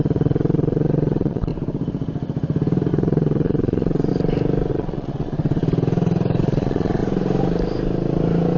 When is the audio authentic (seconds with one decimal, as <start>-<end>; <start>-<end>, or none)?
1.5-2.9; 4.1-4.7; 5.6-6.4; 7.0-8.6